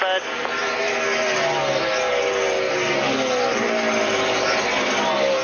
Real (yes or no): yes